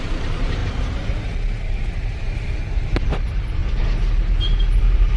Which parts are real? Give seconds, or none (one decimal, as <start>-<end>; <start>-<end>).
0.6-1.6; 3.6-4.8

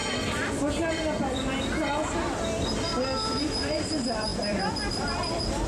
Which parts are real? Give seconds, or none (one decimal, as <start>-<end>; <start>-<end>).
0.0-3.4

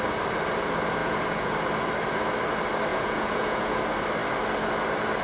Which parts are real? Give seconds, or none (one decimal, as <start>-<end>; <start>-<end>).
0.0-1.0; 1.5-2.9; 3.8-5.2

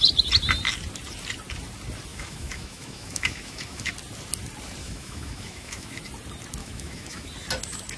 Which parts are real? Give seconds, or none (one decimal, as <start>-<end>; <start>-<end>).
0.0-2.1; 3.9-4.8; 6.0-6.6; 7.3-8.0

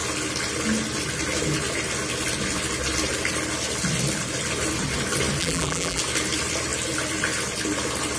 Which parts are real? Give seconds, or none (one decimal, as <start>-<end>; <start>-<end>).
0.0-5.4; 6.0-8.2

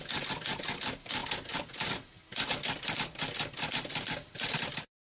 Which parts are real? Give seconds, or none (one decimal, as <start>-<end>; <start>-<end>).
0.0-5.1

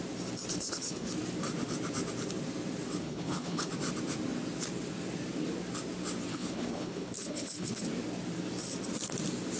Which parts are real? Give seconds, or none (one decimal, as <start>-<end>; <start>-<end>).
0.0-0.5; 1.1-3.0; 3.7-6.3; 7.8-9.6

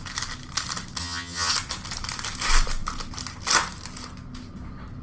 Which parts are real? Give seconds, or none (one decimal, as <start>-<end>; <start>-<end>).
0.0-1.0; 1.5-5.0